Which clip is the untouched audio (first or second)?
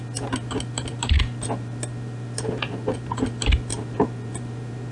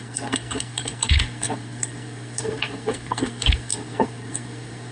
first